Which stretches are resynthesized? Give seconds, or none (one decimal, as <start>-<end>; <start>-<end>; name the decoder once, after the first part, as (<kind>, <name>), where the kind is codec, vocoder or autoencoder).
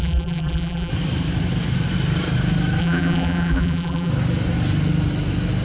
0.0-0.9 (vocoder, BigVGAN v2); 2.8-4.1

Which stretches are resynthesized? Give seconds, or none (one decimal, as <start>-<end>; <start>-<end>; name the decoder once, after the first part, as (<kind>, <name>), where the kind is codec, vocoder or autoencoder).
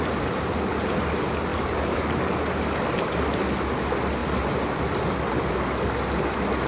1.5-2.3 (vocoder, BigVGAN v2); 4.2-5.5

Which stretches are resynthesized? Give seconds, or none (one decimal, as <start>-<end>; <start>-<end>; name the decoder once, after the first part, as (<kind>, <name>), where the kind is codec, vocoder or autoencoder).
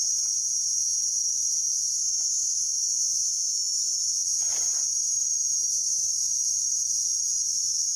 none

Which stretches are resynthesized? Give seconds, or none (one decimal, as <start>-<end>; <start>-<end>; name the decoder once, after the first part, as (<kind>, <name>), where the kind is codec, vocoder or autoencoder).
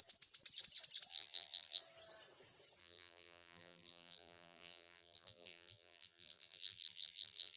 1.1-1.8 (vocoder, BigVGAN v2); 2.8-7.6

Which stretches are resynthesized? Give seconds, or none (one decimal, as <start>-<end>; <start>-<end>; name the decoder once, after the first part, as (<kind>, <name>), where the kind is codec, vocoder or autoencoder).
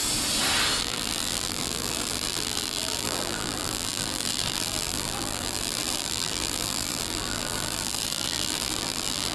0.8-9.3 (vocoder, BigVGAN v2)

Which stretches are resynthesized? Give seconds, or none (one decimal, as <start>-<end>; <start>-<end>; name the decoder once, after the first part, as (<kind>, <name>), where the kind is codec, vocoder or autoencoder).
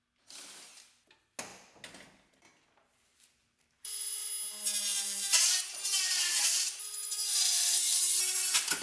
3.4-4.3 (vocoder, BigVGAN v2); 4.9-8.2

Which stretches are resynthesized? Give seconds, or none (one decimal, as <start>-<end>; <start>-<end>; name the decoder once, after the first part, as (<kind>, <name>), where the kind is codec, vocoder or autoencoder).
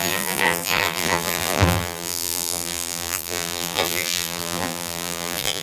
0.0-5.6 (vocoder, BigVGAN v2)